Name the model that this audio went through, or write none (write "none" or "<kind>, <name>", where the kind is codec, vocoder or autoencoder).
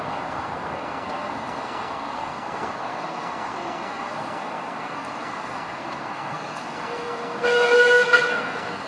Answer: codec, SNAC